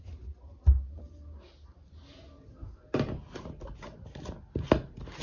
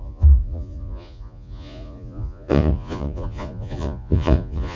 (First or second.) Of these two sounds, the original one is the first